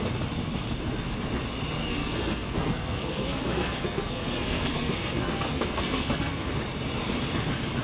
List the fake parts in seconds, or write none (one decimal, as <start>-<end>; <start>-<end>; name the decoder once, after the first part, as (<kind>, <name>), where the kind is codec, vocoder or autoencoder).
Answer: 1.8-6.5 (codec, SNAC)